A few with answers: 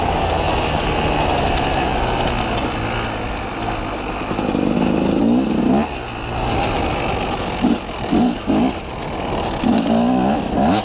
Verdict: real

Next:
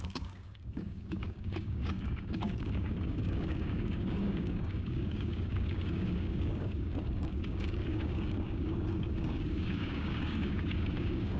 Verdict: fake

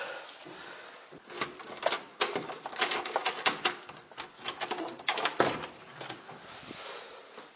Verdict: real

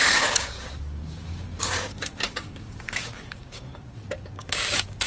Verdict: fake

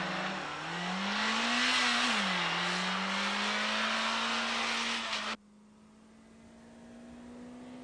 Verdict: real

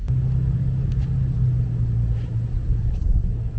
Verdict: real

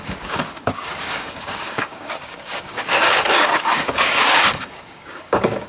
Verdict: fake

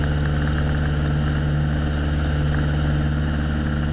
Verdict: real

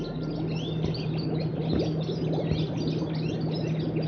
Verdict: real